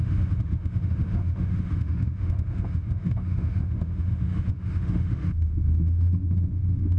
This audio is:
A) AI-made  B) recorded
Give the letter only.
A